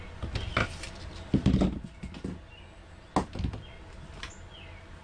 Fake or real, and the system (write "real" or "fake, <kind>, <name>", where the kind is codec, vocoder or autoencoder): real